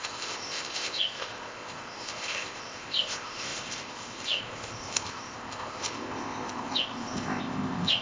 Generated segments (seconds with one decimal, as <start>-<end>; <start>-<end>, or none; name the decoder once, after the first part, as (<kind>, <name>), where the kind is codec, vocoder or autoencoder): 0.0-8.0 (codec, ZipCodec)

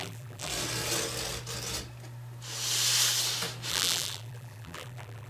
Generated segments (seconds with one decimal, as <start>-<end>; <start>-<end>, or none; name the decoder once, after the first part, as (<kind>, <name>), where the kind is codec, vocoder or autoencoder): 0.0-0.5 (vocoder, BigVGAN v2); 3.7-5.3

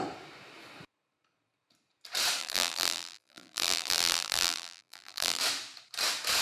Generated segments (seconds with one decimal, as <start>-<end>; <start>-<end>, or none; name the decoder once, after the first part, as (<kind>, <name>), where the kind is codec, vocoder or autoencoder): 2.4-5.4 (vocoder, BigVGAN v2)

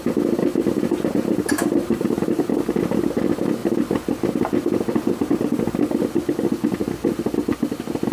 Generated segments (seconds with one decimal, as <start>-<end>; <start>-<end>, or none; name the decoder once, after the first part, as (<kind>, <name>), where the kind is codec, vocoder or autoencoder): 1.8-2.4 (vocoder, BigVGAN v2)

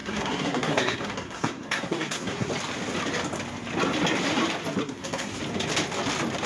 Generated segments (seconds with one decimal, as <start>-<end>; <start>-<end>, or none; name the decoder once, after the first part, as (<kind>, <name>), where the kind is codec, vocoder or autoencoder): 0.0-2.5 (codec, SNAC); 4.8-5.4

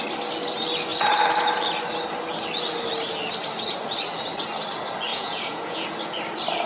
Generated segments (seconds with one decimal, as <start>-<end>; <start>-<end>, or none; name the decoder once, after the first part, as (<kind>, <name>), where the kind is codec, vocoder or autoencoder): 5.1-5.9 (vocoder, Vocos)

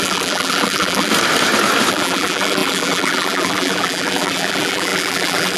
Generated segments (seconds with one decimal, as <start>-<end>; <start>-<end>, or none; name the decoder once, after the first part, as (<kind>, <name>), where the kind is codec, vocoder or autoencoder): 0.0-1.1 (vocoder, BigVGAN v2); 1.9-5.6

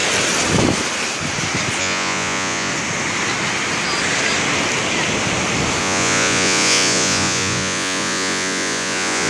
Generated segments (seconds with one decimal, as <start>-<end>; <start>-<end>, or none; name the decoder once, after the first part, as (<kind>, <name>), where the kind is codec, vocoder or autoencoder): 1.8-2.7 (vocoder, Vocos); 5.8-9.3